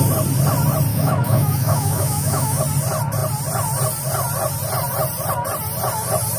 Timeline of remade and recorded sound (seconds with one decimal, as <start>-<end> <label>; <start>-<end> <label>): 0.0-0.9 recorded; 0.9-2.6 remade; 2.6-6.4 recorded